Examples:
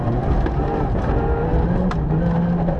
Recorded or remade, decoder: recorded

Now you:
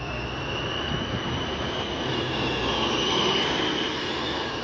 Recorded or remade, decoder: recorded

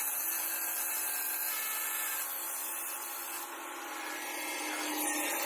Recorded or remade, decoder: recorded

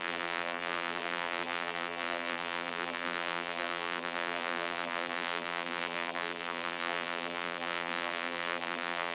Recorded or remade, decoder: remade, vocoder, BigVGAN v2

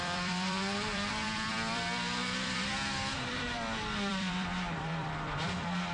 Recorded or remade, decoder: remade, vocoder, BigVGAN v2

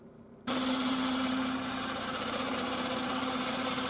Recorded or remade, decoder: remade, vocoder, BigVGAN v2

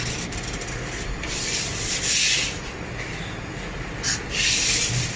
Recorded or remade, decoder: recorded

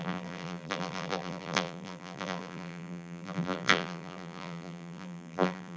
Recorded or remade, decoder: remade, vocoder, BigVGAN v2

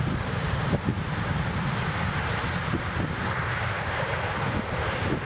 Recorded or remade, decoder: remade, vocoder, BigVGAN v2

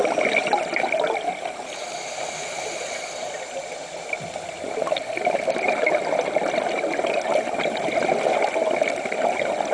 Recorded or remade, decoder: recorded